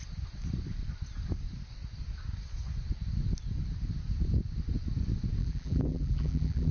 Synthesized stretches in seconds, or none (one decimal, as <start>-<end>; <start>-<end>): 5.4-6.7